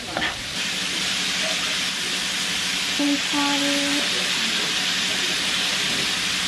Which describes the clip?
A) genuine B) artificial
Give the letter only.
B